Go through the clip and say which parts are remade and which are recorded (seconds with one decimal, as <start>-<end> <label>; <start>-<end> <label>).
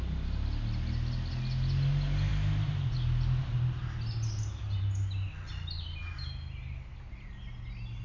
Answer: 0.0-8.0 recorded